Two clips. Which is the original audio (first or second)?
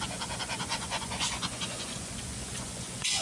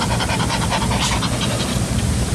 second